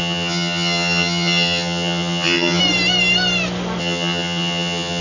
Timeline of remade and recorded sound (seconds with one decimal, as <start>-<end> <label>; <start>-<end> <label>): 0.0-2.6 remade; 2.6-3.8 recorded; 3.8-5.0 remade